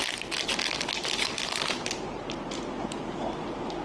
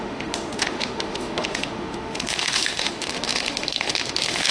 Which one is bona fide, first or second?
first